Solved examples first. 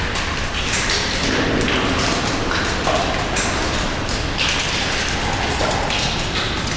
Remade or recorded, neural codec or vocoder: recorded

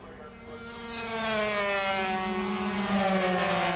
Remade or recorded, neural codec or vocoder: recorded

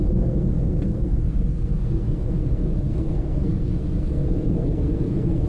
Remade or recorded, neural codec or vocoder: remade, codec, SNAC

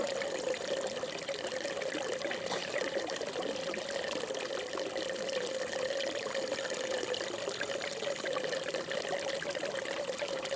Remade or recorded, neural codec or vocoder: recorded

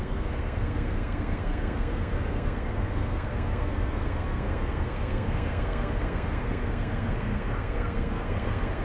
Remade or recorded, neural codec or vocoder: remade, codec, SNAC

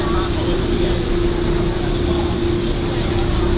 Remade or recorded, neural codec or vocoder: recorded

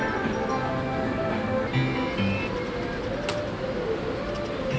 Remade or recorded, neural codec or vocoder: recorded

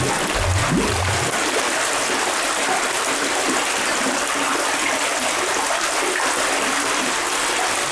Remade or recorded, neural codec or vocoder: recorded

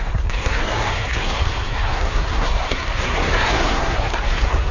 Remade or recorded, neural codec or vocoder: remade, codec, SNAC